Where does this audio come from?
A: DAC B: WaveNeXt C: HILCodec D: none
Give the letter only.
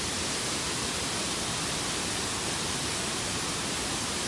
D